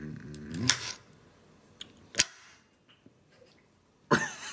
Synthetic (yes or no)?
no